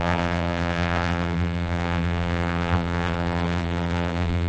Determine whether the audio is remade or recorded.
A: remade